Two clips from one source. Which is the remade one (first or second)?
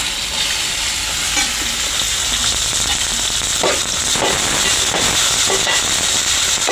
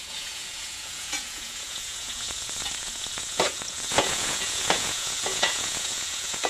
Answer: second